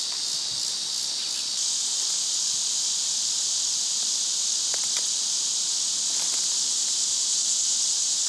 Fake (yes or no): no